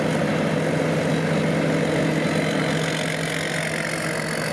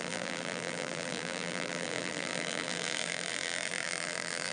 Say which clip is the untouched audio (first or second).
first